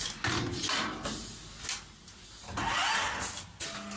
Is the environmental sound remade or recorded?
recorded